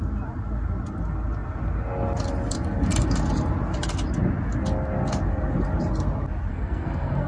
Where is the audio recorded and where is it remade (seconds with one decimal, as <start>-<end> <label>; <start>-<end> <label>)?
0.0-6.5 recorded; 6.5-7.3 remade